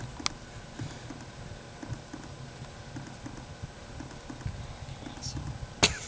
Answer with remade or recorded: recorded